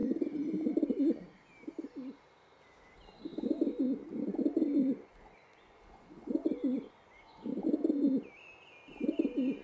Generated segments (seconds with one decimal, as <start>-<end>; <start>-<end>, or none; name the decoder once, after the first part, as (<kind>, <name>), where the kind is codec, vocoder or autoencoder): 4.8-7.6 (vocoder, Vocos)